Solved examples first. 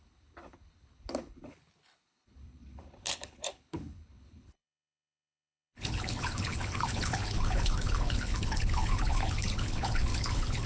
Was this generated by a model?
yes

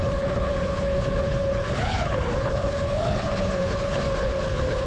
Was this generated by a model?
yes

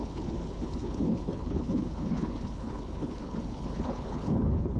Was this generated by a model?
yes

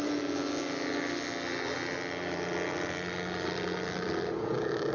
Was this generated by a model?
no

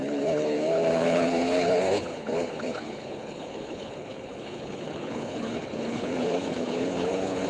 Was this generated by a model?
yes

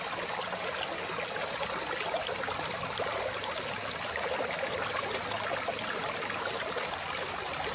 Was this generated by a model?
no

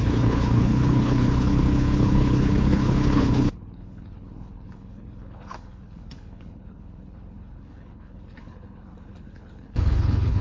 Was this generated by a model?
yes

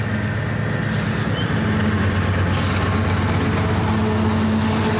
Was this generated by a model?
no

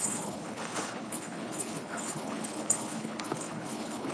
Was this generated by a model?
yes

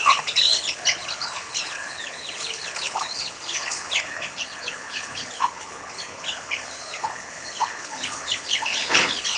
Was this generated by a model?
yes